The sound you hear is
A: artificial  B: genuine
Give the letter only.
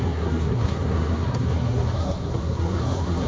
A